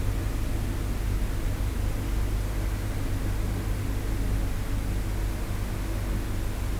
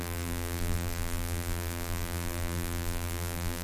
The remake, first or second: second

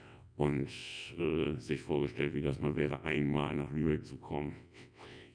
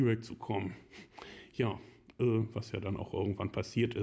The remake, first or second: first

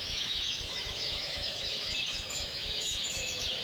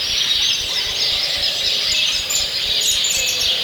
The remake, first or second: first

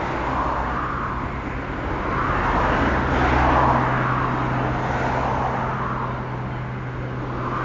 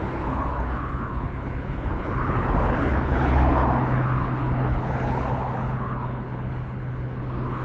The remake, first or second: second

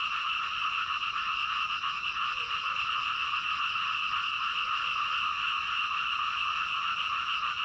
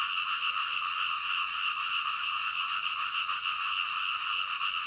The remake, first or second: first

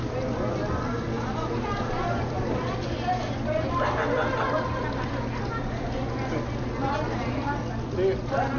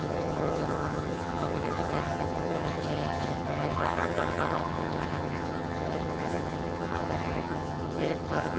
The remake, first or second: second